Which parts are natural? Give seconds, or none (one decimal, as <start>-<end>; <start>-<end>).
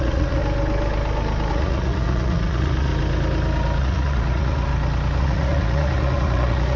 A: 0.4-1.5; 2.9-3.8; 4.7-5.2